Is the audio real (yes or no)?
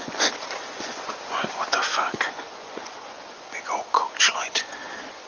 no